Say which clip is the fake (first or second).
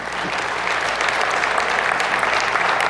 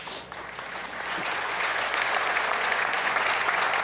second